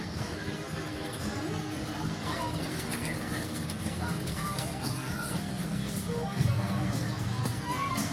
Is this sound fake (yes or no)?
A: yes